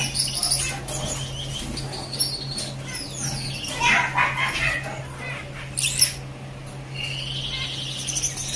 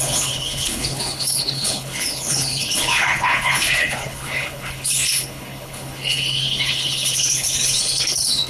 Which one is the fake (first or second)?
second